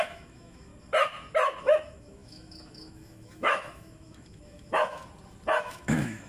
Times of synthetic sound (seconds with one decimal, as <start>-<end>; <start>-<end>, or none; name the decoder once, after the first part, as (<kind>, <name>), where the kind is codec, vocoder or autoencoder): 0.0-0.7 (autoencoder, DAC-VAE); 1.6-5.0; 5.6-6.3